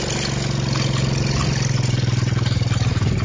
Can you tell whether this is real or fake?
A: real